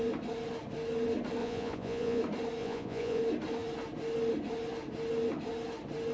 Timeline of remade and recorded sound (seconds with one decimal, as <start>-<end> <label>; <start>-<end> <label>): 0.0-1.4 recorded; 1.4-2.2 remade; 2.2-2.6 recorded; 2.6-3.2 remade; 3.2-6.1 recorded